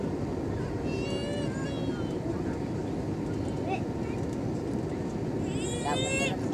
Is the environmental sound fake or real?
real